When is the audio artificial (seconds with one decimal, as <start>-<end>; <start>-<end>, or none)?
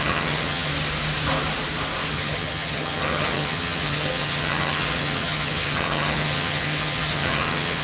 0.0-0.7; 2.1-7.8